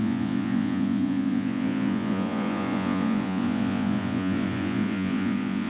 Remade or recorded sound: remade